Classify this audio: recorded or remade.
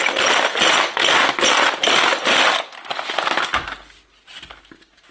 recorded